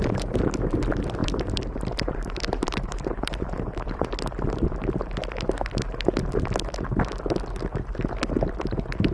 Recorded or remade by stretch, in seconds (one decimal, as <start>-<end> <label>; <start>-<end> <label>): 0.0-1.2 recorded; 1.2-4.1 remade; 4.1-9.1 recorded